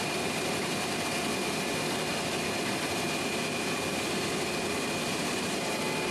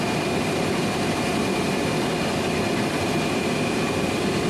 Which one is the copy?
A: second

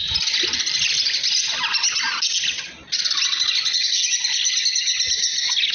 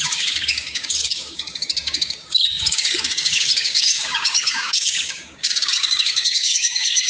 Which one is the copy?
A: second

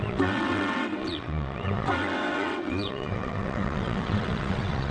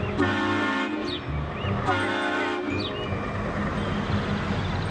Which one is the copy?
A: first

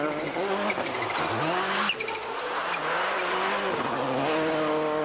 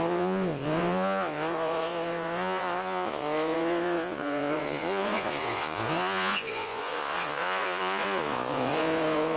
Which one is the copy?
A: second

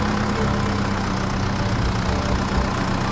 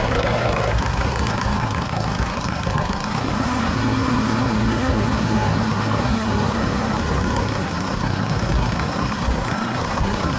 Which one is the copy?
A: second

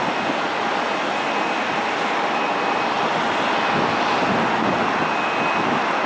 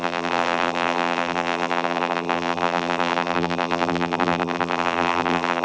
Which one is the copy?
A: second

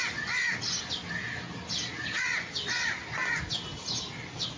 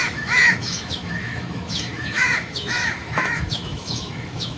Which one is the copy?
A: second